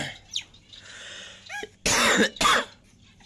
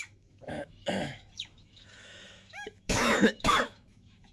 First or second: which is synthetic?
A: second